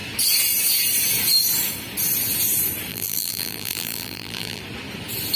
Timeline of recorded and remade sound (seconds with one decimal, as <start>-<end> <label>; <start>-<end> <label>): 0.0-2.9 recorded; 2.9-4.6 remade; 4.6-5.4 recorded